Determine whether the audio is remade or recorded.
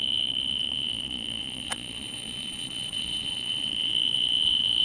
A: remade